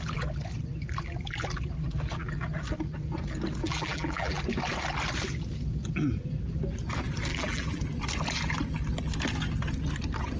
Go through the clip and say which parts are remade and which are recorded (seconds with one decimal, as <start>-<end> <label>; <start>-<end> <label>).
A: 0.0-3.6 recorded; 3.6-4.4 remade; 4.4-7.3 recorded; 7.3-7.8 remade; 7.8-10.4 recorded